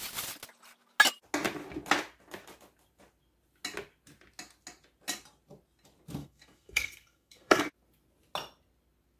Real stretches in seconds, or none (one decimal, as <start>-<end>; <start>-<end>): 0.0-6.2; 7.6-9.2